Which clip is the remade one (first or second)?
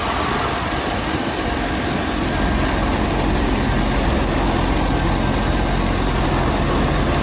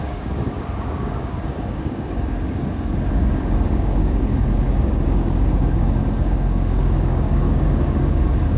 second